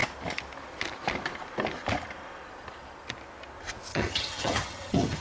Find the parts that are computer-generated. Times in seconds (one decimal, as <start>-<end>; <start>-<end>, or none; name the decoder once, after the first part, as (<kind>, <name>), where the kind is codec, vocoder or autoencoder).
3.9-5.2 (vocoder, HiFi-GAN)